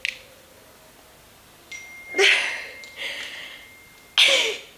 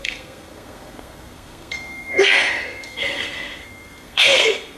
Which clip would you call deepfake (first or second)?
second